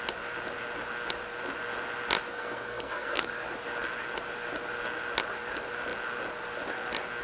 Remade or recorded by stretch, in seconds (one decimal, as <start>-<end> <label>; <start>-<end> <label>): 0.0-2.3 recorded; 2.3-3.3 remade; 3.3-7.2 recorded